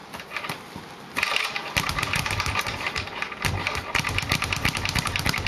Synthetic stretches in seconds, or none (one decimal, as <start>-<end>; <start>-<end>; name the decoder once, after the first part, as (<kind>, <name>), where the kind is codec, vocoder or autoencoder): none